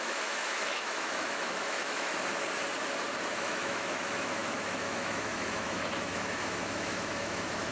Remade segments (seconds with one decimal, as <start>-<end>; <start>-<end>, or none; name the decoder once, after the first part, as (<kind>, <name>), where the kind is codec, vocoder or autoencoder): 0.0-2.1 (autoencoder, DAC-VAE); 3.3-7.7